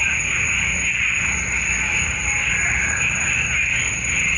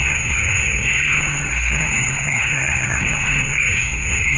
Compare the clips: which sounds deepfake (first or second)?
second